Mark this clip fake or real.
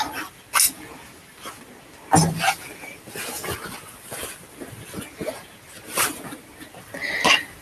real